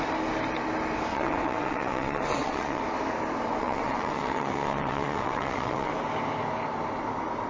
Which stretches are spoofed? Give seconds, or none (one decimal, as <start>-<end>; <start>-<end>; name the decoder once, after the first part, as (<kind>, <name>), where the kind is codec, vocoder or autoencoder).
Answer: 1.1-2.8 (vocoder, WaveNeXt); 3.6-5.9